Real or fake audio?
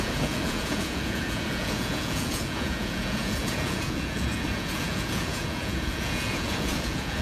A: fake